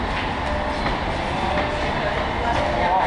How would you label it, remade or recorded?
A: recorded